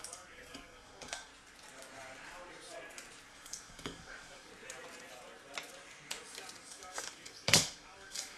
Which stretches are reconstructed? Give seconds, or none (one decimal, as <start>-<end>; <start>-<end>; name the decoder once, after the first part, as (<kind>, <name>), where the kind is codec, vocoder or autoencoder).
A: 0.0-1.3 (codec, DAC); 3.3-4.5; 6.6-8.4